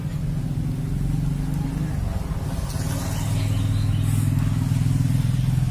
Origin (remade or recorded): recorded